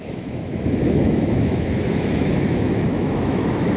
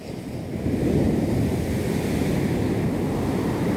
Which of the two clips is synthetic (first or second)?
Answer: first